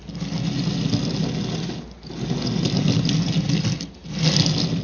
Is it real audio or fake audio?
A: real